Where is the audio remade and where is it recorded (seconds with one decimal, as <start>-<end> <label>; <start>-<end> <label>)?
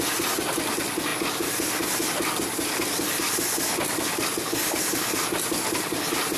0.0-6.4 recorded